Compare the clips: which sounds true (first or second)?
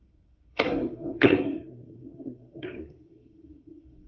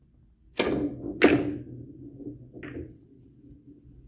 second